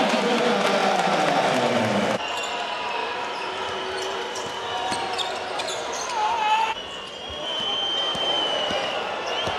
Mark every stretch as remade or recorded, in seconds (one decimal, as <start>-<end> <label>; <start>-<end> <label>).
0.0-3.0 recorded; 3.0-6.3 remade; 6.3-8.1 recorded; 8.1-9.0 remade; 9.0-9.6 recorded